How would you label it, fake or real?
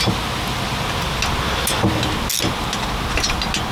real